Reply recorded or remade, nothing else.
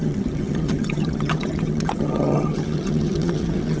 remade